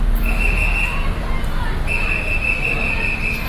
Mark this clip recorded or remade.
recorded